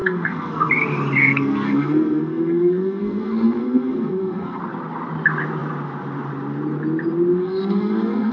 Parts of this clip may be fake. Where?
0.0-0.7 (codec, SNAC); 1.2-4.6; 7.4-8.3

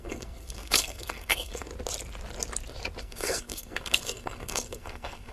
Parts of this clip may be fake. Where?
0.0-1.7 (codec, SNAC); 3.0-5.3

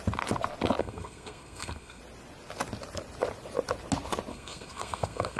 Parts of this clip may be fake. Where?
0.8-2.0 (codec, SNAC); 4.3-5.4

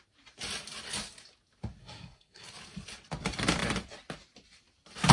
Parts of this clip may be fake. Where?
1.8-2.5 (codec, SNAC)

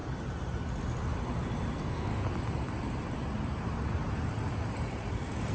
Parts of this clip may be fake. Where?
1.7-2.1 (codec, SNAC)